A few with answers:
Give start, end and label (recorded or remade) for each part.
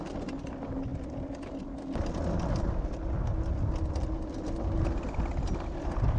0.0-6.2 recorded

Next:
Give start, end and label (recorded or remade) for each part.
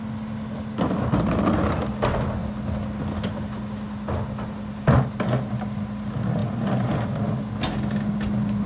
0.0-8.7 recorded